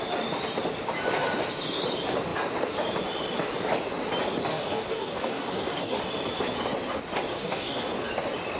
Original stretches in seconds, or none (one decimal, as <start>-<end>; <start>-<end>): 0.0-4.5; 6.0-7.3; 7.9-8.6